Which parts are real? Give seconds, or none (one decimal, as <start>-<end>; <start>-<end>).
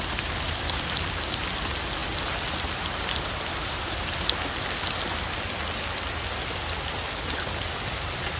0.0-8.4